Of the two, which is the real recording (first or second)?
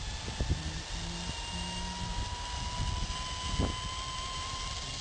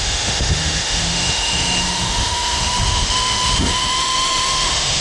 first